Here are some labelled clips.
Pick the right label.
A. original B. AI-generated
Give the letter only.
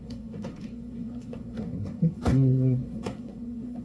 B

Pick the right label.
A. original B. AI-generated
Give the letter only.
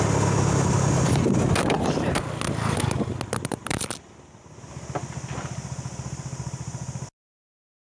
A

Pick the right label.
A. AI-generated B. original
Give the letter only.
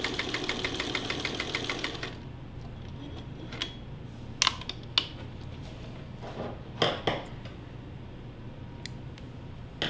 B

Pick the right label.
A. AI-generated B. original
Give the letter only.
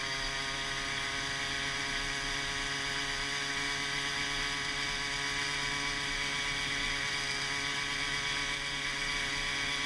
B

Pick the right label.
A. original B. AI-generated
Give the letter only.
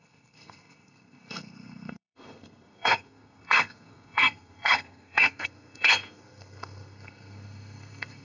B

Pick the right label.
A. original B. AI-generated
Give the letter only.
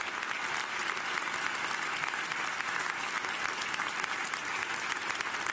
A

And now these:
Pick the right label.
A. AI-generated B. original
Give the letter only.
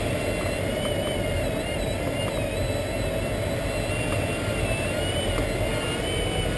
B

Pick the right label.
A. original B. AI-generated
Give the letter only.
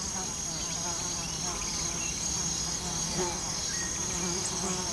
A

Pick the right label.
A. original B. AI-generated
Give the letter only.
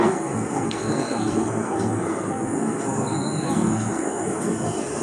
B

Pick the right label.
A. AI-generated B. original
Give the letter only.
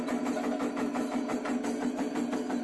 B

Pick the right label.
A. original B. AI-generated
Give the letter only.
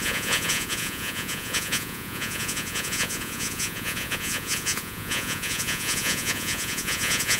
B